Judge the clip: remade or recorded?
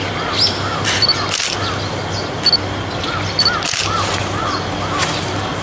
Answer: recorded